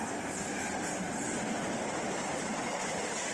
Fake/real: real